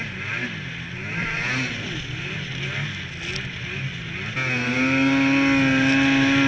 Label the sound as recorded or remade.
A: recorded